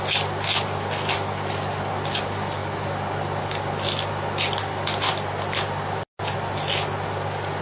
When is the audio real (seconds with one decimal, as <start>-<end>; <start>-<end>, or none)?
0.0-7.6